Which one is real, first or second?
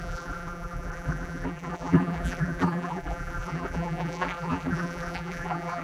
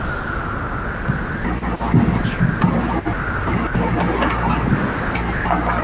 second